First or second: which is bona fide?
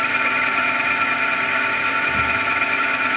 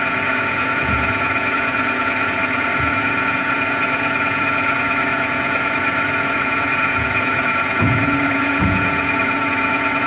first